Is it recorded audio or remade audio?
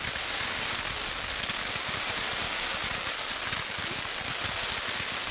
recorded